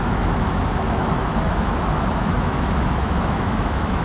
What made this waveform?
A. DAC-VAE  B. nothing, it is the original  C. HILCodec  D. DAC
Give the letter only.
A